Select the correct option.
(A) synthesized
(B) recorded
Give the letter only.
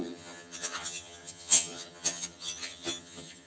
A